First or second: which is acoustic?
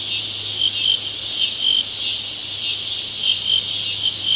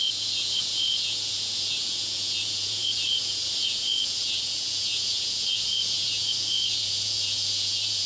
first